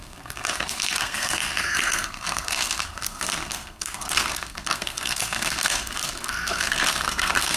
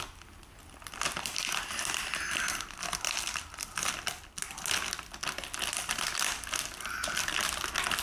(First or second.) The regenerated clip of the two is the first